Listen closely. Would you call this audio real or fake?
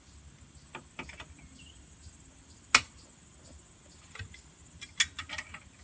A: real